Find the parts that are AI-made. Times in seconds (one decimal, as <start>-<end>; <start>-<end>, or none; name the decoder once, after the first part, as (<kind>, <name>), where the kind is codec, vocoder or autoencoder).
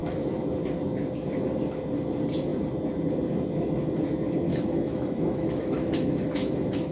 4.5-6.5 (autoencoder, DAC-VAE)